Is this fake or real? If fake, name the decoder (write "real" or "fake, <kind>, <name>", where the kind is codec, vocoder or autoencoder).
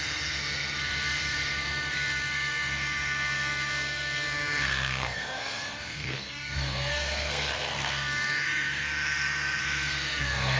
fake, codec, SNAC